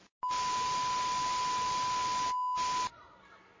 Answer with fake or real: real